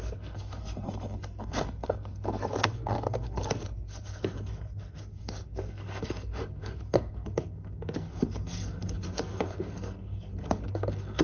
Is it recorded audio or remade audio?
remade